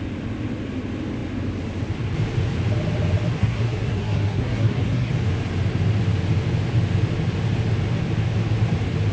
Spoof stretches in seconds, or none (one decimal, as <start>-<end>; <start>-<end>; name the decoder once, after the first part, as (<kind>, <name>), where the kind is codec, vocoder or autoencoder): 3.4-5.1 (codec, SNAC)